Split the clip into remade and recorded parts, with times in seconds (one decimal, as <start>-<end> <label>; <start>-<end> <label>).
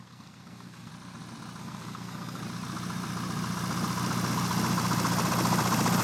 0.0-0.9 remade; 0.9-1.6 recorded; 1.6-2.4 remade; 2.4-6.0 recorded